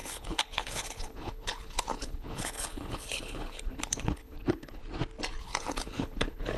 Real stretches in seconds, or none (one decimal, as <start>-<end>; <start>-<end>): 4.8-5.4

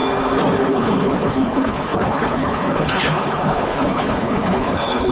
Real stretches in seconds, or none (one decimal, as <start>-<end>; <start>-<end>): 0.0-0.7

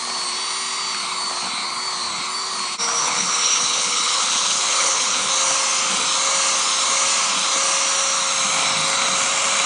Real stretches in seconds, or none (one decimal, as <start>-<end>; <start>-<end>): 0.0-3.0; 5.3-9.7

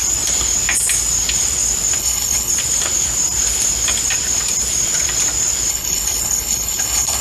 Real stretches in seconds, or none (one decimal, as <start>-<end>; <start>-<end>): 0.0-2.0; 2.5-5.7